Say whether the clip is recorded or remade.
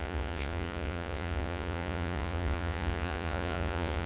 remade